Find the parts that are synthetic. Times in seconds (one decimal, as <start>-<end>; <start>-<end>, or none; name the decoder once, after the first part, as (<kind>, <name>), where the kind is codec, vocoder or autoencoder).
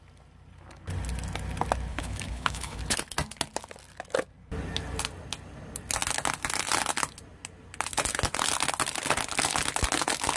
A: 1.9-2.8 (codec, HILCodec)